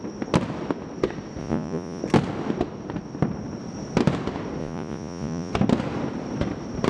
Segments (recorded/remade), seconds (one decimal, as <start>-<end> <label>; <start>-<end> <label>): 0.0-1.4 recorded; 1.4-2.0 remade; 2.0-4.6 recorded; 4.6-5.5 remade; 5.5-6.9 recorded